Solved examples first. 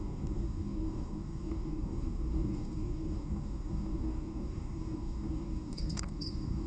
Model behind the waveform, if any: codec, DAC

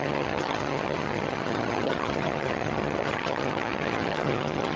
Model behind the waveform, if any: vocoder, HiFi-GAN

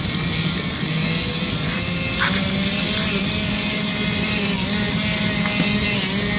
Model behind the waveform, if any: none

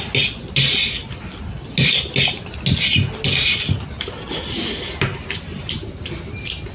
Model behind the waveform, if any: none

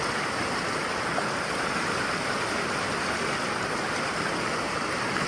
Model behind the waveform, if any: none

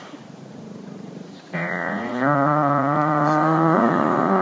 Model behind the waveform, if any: vocoder, Vocos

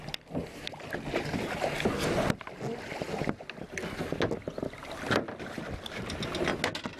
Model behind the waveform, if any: none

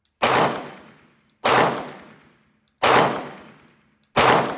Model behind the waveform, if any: none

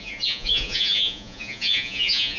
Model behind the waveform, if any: vocoder, Vocos